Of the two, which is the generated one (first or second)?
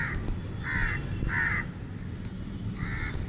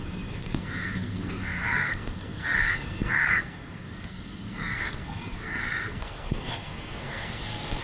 second